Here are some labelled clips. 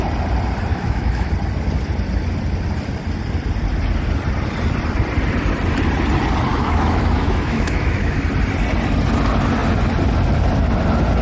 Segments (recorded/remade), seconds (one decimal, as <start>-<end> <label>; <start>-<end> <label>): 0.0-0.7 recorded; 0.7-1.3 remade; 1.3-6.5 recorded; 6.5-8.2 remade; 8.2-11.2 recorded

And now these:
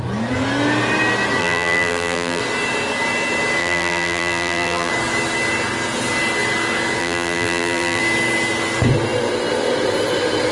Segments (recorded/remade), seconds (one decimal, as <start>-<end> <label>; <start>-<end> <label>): 0.0-1.4 recorded; 1.4-2.4 remade; 2.4-3.6 recorded; 3.6-4.9 remade; 4.9-7.0 recorded; 7.0-8.0 remade; 8.0-10.5 recorded

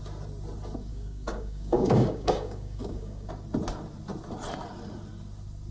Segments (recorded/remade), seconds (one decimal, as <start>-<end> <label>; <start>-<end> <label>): 0.0-0.9 recorded; 0.9-3.3 remade; 3.3-5.7 recorded